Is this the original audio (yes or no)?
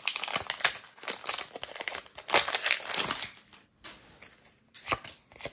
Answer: yes